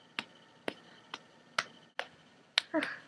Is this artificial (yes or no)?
no